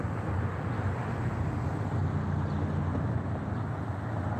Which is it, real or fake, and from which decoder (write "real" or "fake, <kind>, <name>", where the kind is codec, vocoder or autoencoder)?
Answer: real